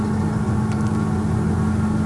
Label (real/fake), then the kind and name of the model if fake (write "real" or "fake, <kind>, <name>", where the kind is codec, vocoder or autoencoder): real